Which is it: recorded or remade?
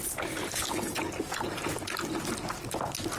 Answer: recorded